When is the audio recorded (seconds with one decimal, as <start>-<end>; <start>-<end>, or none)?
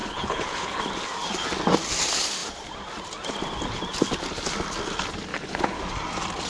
0.8-5.3; 5.8-6.5